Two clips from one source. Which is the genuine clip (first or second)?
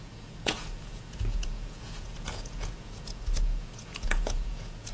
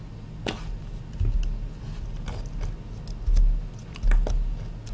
second